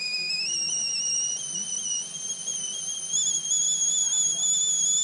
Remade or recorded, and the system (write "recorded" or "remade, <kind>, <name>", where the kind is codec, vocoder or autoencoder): recorded